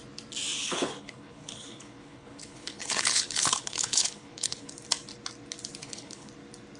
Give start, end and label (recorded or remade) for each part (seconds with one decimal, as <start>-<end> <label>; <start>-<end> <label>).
0.0-0.6 recorded; 0.6-4.7 remade; 4.7-5.8 recorded; 5.8-6.3 remade; 6.3-6.8 recorded